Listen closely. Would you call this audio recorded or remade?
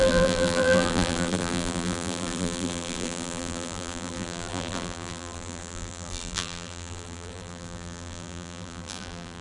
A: remade